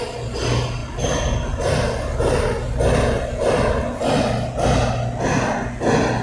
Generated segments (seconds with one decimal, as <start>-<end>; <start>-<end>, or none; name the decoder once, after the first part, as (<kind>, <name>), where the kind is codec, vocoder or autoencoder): none